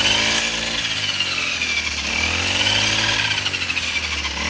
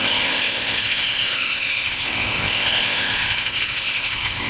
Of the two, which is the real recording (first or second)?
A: first